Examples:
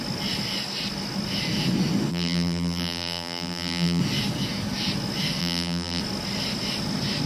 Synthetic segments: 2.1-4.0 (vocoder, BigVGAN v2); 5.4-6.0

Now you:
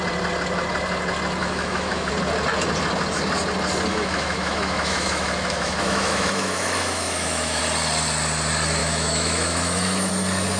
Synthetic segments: 1.4-2.1 (autoencoder, DAC-VAE); 3.9-7.6; 8.8-10.1